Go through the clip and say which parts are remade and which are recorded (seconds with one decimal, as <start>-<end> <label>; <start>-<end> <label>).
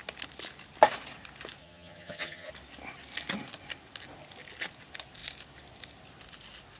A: 0.0-1.6 recorded; 1.6-2.5 remade; 2.5-6.8 recorded